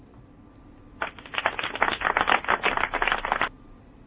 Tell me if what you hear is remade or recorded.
recorded